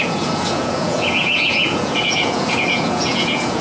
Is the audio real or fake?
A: fake